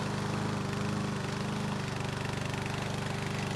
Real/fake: real